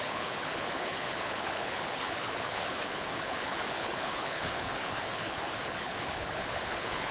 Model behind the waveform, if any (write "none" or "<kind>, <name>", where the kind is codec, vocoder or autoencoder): codec, HILCodec